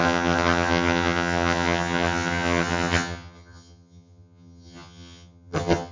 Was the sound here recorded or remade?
remade